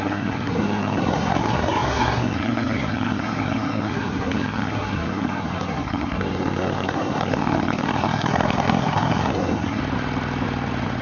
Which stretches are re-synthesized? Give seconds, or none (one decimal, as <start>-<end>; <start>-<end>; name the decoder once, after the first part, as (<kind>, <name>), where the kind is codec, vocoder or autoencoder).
0.0-9.8 (codec, SNAC)